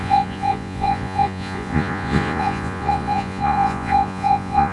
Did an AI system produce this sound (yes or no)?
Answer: yes